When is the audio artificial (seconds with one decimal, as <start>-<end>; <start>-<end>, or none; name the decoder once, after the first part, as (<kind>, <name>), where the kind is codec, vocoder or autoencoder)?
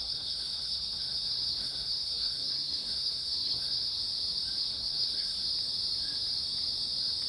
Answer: 0.0-4.0 (codec, SNAC); 4.6-5.4